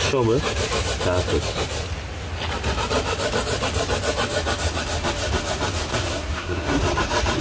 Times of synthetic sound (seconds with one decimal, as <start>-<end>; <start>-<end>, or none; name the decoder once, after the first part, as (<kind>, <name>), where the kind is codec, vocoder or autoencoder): 5.9-6.8 (codec, SNAC)